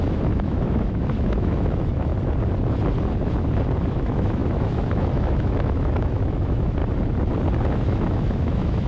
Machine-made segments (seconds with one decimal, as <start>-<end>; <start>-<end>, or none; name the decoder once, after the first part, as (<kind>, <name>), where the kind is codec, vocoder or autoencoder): 0.0-2.1 (autoencoder, DAC-VAE); 3.9-6.8; 7.7-8.9